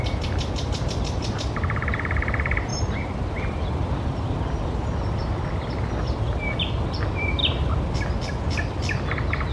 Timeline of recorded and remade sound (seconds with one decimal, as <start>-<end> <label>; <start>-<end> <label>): 0.0-9.5 recorded